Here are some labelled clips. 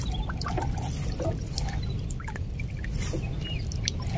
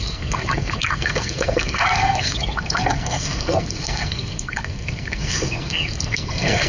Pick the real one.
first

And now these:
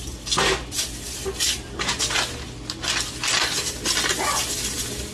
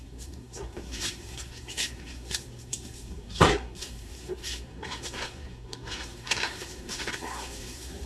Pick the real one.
first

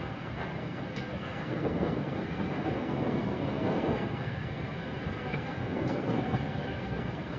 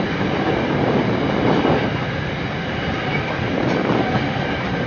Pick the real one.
second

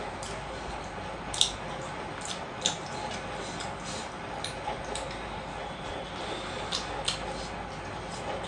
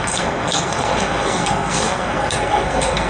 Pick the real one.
first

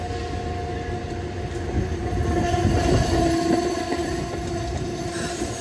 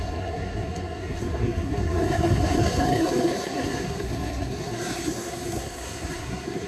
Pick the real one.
first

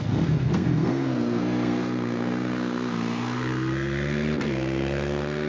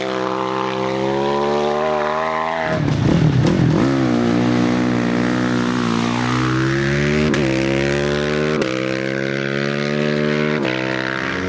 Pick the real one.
second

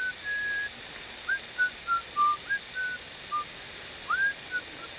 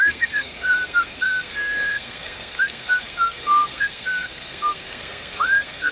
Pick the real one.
first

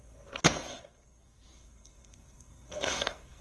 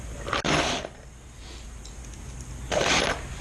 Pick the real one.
second